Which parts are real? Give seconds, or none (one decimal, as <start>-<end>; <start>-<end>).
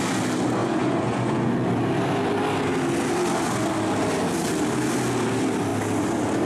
0.0-0.6; 1.5-6.5